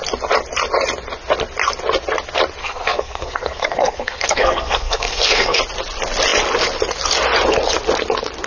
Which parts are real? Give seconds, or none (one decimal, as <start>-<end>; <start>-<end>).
0.0-2.6; 5.6-8.5